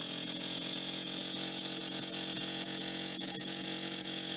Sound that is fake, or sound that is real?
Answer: fake